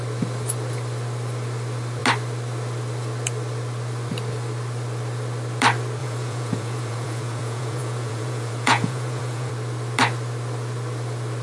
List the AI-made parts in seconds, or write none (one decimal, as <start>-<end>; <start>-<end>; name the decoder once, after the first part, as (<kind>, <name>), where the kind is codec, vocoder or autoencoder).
6.0-9.5 (vocoder, Vocos)